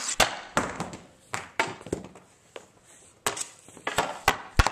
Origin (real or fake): real